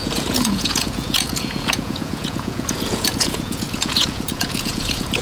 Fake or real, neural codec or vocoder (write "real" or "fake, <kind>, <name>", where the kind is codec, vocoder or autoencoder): fake, vocoder, Vocos